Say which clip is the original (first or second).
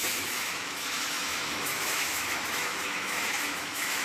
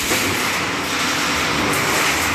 second